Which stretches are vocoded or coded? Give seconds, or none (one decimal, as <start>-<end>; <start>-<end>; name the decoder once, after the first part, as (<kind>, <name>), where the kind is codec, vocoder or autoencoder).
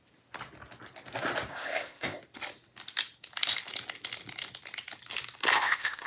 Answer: 1.5-2.2 (codec, ZipCodec); 5.5-6.1